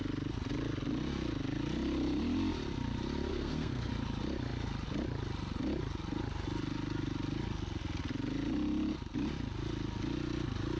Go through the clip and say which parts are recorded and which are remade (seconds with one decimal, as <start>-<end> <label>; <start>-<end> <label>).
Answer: 0.0-3.3 recorded; 3.3-3.9 remade; 3.9-10.8 recorded